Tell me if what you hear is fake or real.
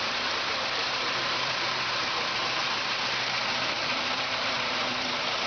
fake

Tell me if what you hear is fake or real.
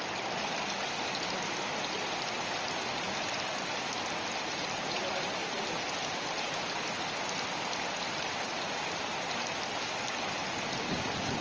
real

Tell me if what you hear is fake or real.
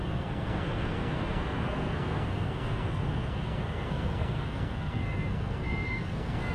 fake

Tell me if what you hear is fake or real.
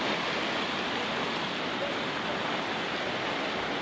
real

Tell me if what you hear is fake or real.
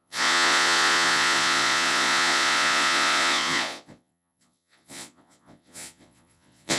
fake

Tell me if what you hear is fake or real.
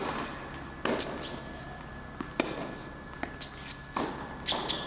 real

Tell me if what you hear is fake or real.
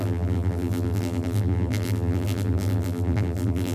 fake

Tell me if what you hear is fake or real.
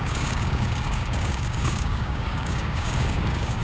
fake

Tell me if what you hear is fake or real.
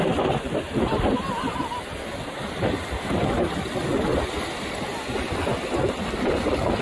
real